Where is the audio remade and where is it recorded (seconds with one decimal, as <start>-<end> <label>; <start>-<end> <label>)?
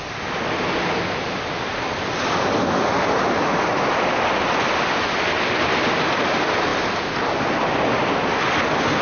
0.0-9.0 recorded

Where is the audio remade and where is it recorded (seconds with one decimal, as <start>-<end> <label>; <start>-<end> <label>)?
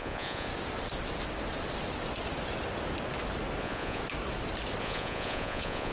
0.0-0.5 remade; 0.5-3.6 recorded; 3.6-4.0 remade; 4.0-4.8 recorded; 4.8-5.9 remade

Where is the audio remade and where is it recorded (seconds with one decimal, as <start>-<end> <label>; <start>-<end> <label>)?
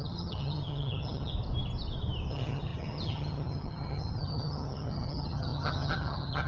0.0-1.3 remade; 1.3-2.3 recorded; 2.3-6.5 remade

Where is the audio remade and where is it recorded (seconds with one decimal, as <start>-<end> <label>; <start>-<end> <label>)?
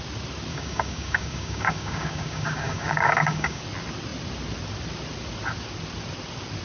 0.0-0.5 recorded; 0.5-3.6 remade; 3.6-6.6 recorded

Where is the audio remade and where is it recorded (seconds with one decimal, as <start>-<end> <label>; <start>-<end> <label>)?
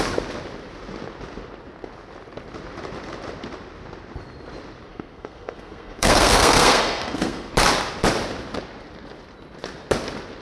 0.0-4.9 recorded; 4.9-7.5 remade; 7.5-10.4 recorded